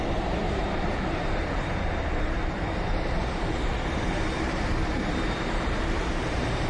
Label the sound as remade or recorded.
remade